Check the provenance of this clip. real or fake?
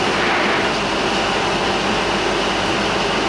real